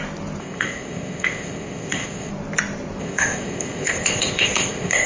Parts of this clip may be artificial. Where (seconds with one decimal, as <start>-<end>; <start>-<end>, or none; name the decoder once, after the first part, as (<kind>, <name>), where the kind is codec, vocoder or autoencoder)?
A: 0.4-2.3 (codec, ZipCodec); 3.0-5.1